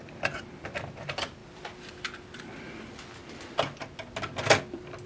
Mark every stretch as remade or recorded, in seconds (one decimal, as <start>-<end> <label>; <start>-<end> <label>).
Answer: 0.0-5.1 recorded